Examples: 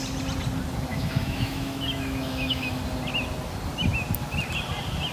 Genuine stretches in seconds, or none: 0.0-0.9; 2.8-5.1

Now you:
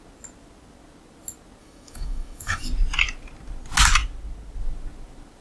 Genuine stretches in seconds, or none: 0.0-1.6; 2.6-5.4

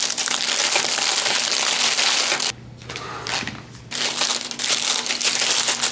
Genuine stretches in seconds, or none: 0.0-5.9